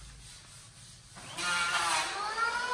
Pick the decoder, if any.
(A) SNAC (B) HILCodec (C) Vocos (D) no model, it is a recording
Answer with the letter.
D